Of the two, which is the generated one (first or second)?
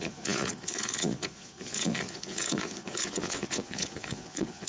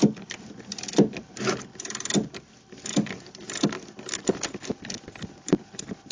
first